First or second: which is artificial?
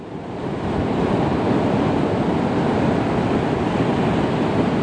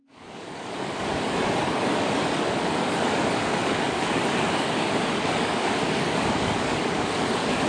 second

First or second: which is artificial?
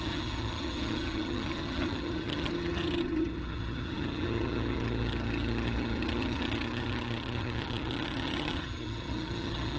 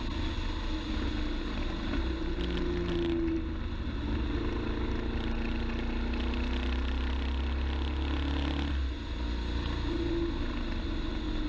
first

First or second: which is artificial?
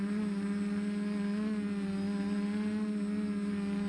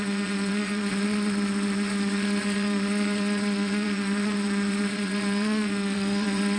second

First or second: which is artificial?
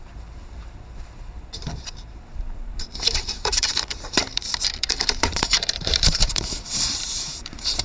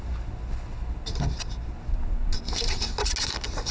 first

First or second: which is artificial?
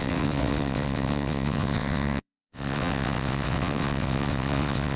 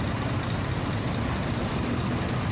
first